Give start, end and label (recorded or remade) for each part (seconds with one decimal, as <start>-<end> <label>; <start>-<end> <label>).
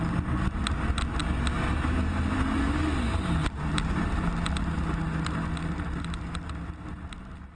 0.0-7.6 recorded